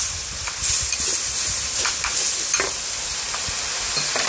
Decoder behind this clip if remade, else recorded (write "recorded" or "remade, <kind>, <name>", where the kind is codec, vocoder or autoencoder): recorded